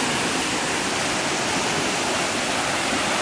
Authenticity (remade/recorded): recorded